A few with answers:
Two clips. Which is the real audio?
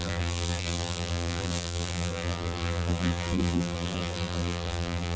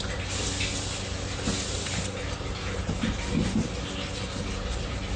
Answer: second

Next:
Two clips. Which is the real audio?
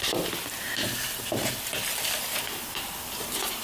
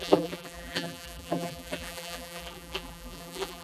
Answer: first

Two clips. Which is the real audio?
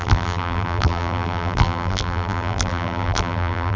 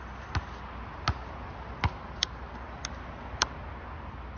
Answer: second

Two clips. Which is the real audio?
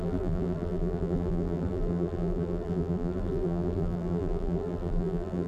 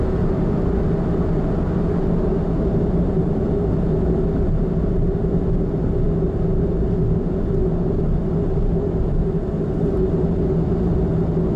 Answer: second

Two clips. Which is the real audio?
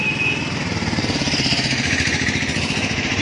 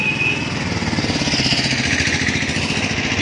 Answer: second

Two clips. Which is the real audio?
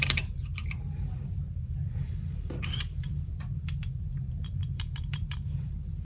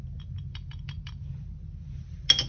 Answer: second